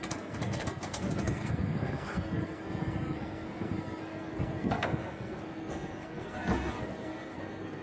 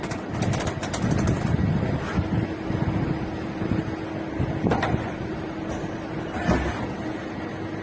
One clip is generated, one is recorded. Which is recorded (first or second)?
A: second